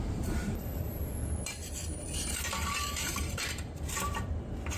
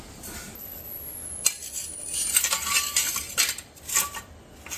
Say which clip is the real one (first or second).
second